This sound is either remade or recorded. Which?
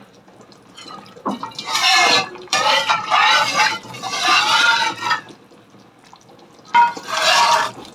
remade